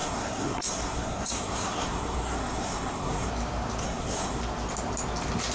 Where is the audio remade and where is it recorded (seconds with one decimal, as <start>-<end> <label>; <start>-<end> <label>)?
0.0-3.3 remade; 3.3-3.8 recorded; 3.8-4.4 remade; 4.4-5.5 recorded